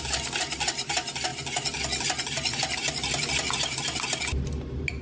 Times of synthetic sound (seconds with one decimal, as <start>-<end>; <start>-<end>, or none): none